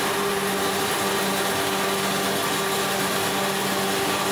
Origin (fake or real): real